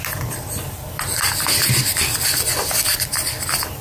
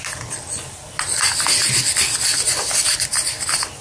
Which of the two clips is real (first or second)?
second